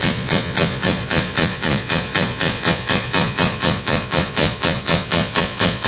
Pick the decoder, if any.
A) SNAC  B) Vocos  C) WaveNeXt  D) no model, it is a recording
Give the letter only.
B